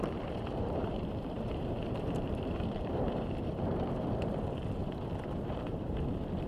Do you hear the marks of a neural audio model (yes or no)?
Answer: yes